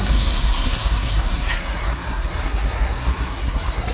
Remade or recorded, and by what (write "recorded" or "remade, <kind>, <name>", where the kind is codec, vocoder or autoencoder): remade, codec, SNAC